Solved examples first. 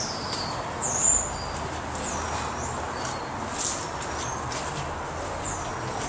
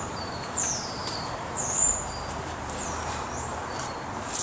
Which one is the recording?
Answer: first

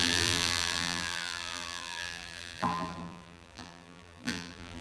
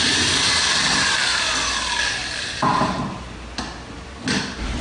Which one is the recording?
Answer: second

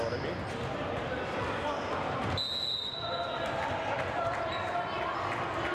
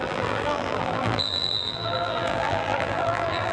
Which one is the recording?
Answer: first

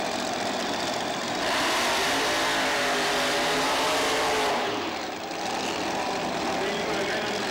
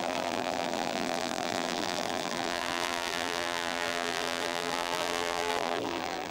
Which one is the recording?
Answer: first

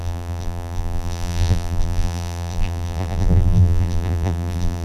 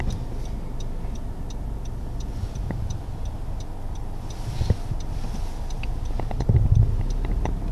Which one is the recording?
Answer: second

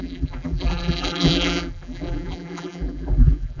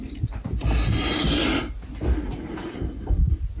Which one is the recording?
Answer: second